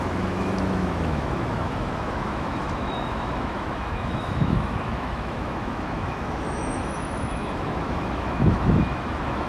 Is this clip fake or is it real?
fake